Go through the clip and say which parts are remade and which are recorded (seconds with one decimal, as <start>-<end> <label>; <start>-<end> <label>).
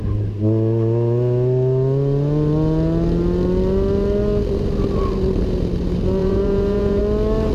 0.0-6.2 recorded; 6.2-7.0 remade; 7.0-7.5 recorded